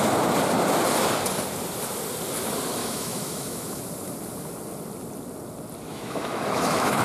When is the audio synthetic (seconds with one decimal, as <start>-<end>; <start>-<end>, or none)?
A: 2.8-3.8; 5.9-7.0